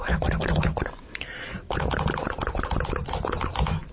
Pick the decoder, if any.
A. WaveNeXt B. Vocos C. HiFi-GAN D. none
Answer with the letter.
D